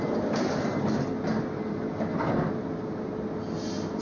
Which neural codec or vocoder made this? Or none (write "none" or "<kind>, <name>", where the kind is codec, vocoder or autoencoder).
none